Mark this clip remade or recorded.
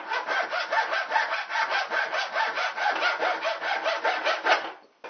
recorded